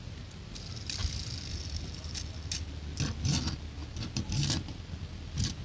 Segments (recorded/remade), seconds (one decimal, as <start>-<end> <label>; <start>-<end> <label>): 0.0-5.6 recorded